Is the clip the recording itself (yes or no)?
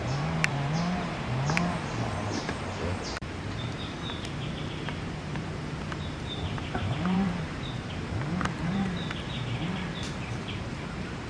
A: no